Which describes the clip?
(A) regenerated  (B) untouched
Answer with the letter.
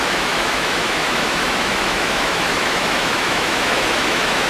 A